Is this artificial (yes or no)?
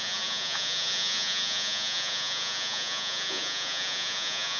yes